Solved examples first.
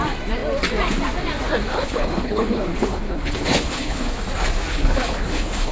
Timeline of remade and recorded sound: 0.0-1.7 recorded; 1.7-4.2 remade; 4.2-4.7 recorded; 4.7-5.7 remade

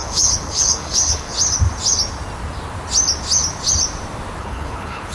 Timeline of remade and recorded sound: 0.0-1.3 remade; 1.3-4.4 recorded; 4.4-5.1 remade

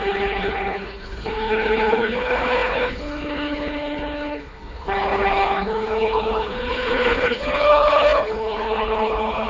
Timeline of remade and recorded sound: 0.0-9.5 remade

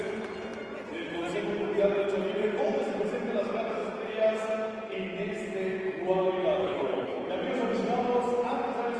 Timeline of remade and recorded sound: 0.0-6.6 recorded; 6.6-7.3 remade; 7.3-9.0 recorded

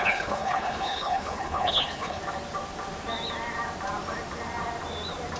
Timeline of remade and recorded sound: 0.0-2.2 remade; 2.2-5.4 recorded